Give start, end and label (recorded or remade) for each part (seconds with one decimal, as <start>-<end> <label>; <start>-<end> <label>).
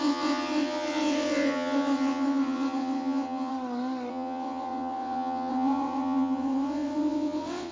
0.0-3.5 remade; 3.5-4.1 recorded; 4.1-7.7 remade